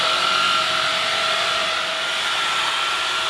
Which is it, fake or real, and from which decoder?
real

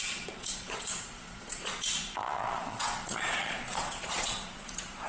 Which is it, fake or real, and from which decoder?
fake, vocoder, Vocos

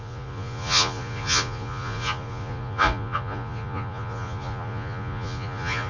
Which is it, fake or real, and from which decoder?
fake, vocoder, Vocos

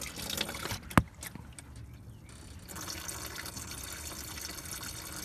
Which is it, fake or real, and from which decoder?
real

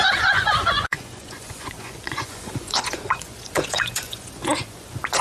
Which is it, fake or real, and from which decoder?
fake, vocoder, Vocos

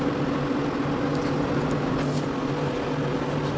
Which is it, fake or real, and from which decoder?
real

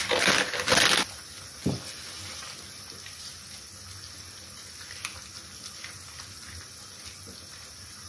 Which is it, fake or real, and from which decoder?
real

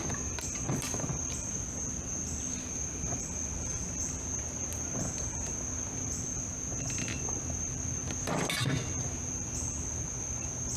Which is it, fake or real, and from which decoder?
real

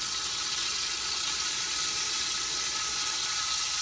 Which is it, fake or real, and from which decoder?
real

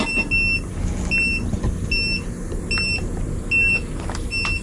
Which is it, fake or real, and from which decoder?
real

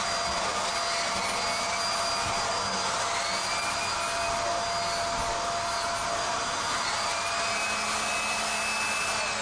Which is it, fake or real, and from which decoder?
real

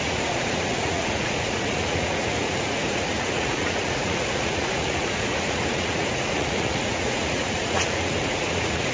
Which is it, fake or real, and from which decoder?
fake, vocoder, Vocos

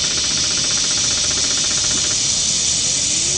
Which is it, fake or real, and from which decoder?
real